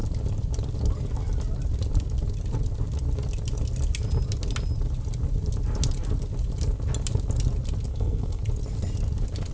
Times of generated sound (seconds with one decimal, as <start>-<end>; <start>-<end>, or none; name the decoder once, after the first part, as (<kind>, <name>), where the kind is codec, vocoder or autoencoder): 7.9-8.4 (codec, SNAC)